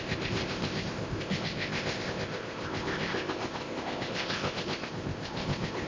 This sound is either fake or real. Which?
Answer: fake